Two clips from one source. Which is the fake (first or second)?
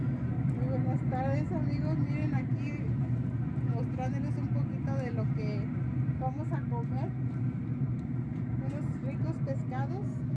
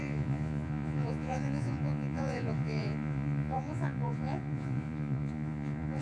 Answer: second